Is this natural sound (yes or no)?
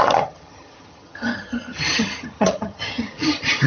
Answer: no